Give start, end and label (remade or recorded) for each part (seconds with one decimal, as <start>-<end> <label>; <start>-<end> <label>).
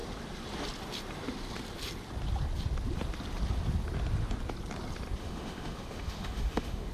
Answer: 0.0-5.2 recorded; 5.2-6.9 remade